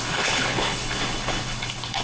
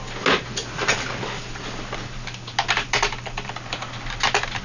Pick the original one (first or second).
second